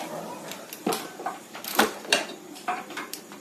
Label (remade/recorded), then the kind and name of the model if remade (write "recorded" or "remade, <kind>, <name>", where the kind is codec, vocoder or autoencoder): remade, vocoder, BigVGAN v2